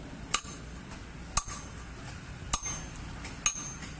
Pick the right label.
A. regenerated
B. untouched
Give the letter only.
B